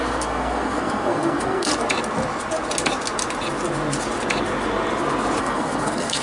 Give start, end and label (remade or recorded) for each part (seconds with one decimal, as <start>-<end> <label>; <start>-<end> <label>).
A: 0.0-1.7 remade; 1.7-5.4 recorded; 5.4-6.2 remade